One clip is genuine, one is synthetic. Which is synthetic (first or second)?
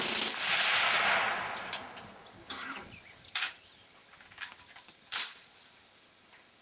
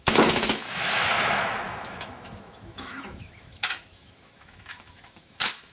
second